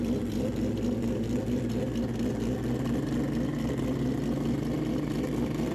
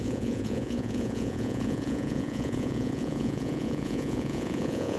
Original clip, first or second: first